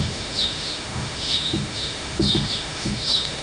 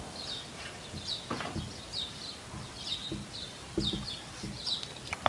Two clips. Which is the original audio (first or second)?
second